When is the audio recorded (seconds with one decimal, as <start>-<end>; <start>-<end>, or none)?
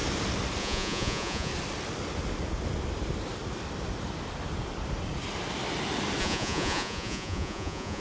0.0-0.6; 1.5-6.2